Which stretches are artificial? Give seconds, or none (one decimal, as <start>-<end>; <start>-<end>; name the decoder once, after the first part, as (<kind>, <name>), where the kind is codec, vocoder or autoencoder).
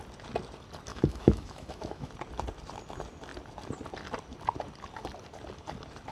0.9-2.1 (autoencoder, DAC-VAE)